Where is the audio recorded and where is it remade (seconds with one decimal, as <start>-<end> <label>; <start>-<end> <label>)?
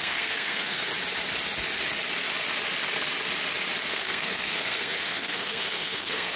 0.0-0.9 remade; 0.9-3.9 recorded; 3.9-6.4 remade